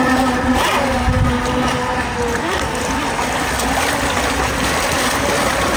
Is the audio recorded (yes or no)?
yes